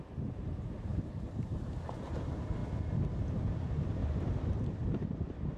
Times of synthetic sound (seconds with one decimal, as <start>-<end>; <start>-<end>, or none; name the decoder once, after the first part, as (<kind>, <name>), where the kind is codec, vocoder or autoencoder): 0.0-2.6 (vocoder, BigVGAN v2); 3.3-5.6